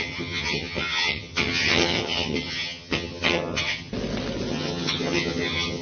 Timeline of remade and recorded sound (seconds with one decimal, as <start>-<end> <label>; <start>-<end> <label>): 0.0-3.9 remade; 3.9-4.5 recorded; 4.5-5.8 remade